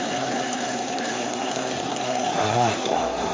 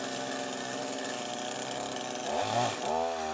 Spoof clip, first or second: first